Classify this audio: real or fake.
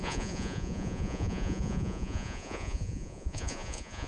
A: fake